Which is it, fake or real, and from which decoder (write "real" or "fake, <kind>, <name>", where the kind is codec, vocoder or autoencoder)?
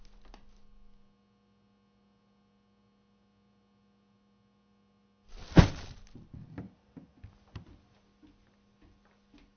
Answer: real